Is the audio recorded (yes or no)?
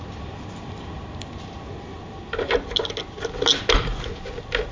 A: yes